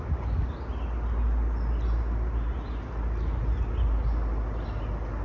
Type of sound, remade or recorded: recorded